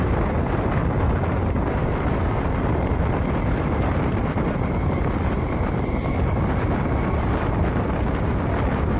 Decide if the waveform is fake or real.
real